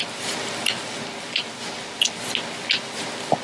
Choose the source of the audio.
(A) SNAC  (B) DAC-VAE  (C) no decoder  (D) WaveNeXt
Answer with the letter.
C